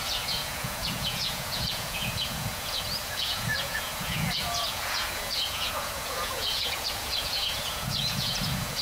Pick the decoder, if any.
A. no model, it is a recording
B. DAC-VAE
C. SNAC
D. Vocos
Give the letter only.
D